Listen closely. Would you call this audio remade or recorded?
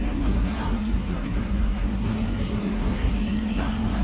remade